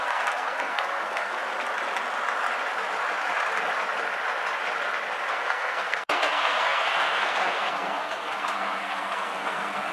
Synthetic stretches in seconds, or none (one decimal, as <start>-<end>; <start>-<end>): 0.0-1.4; 5.3-9.9